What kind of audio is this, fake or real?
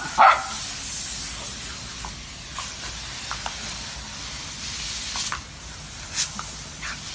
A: real